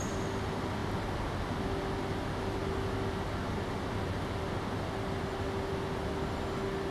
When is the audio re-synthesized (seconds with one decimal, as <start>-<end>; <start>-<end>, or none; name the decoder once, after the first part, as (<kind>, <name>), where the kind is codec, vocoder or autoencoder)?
none